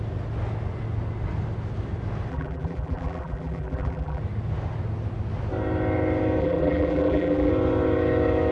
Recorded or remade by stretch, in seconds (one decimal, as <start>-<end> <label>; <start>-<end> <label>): 0.0-2.3 recorded; 2.3-4.2 remade; 4.2-6.4 recorded; 6.4-7.5 remade; 7.5-8.5 recorded